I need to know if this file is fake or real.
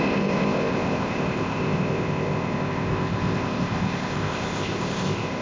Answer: fake